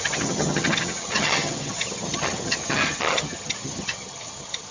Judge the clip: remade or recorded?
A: remade